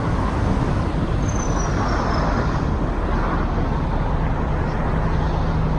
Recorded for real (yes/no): yes